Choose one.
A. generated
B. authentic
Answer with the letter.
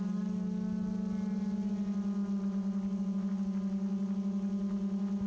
B